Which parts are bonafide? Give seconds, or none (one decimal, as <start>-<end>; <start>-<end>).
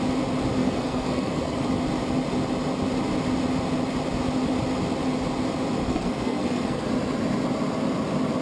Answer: 0.0-0.6; 1.6-5.8; 6.9-8.4